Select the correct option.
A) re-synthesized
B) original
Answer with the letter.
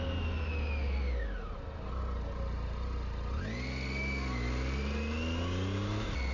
B